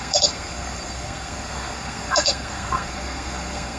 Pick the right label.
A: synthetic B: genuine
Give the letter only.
A